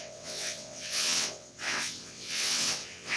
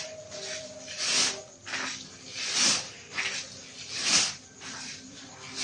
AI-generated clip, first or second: first